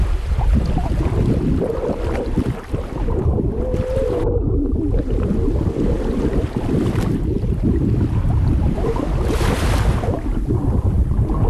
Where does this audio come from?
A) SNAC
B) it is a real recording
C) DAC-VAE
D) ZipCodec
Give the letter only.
B